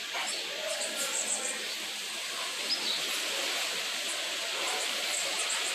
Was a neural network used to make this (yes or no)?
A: no